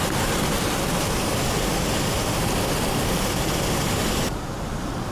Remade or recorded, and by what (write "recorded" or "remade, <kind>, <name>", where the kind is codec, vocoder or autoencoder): recorded